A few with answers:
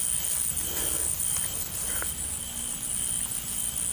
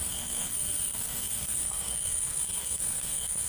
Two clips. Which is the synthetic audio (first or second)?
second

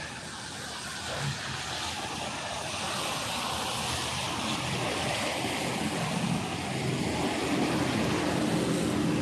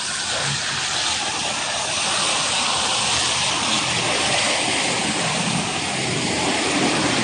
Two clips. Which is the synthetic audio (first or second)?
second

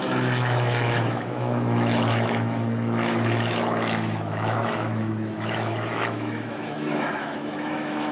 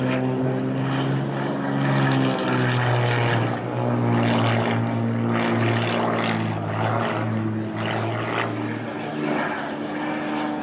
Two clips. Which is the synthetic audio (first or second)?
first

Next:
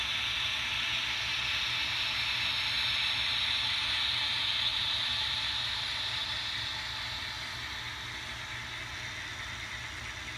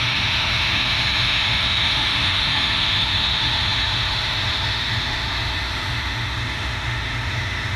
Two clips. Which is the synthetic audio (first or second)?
second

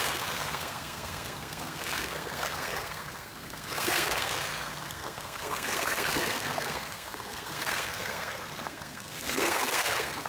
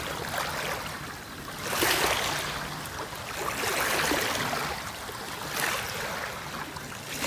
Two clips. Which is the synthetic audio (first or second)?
first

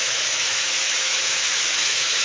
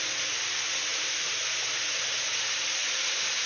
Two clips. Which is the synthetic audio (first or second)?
first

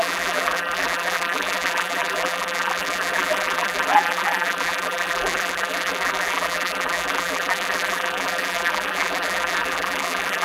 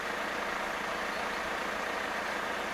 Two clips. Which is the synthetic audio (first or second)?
first